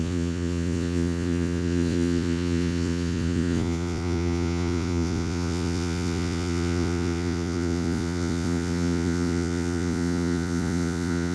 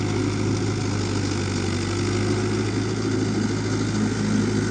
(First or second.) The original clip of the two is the second